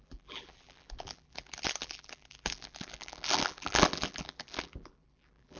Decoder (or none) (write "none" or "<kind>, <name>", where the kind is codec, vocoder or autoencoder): vocoder, BigVGAN v2